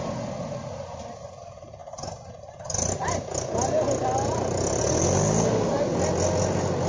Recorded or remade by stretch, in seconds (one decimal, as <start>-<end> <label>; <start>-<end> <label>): 0.0-6.9 recorded